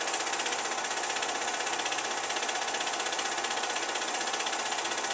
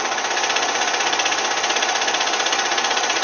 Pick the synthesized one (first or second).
second